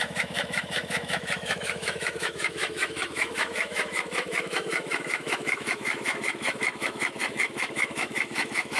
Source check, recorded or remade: remade